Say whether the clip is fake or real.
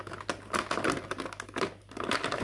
real